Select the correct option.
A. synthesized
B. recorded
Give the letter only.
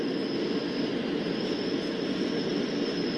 B